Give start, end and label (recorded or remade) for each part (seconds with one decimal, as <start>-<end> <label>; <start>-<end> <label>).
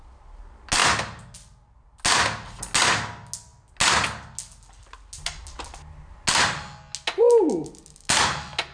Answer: 0.0-8.7 recorded